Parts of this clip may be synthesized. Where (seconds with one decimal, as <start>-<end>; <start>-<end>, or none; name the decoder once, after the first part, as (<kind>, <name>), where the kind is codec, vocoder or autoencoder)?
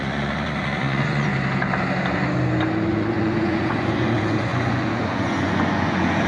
0.0-1.3 (vocoder, Vocos); 2.9-6.3